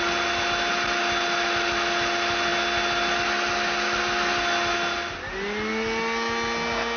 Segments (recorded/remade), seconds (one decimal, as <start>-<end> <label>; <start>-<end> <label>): 0.0-7.0 recorded